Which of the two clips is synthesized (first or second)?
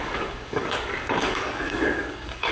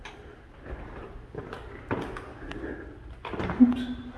first